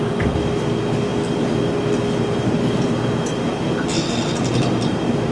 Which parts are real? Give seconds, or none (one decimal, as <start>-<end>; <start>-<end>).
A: 0.0-5.3